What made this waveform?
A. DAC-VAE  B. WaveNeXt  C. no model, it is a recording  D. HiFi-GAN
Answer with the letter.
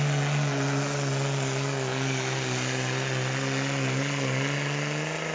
C